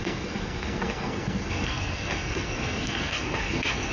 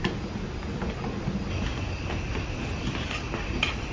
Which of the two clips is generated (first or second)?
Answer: first